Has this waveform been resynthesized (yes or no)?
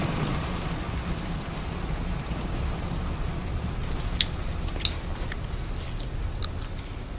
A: no